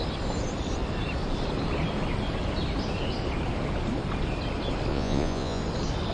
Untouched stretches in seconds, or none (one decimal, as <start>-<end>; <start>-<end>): 0.0-4.9; 5.6-6.1